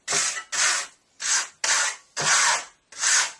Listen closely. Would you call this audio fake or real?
real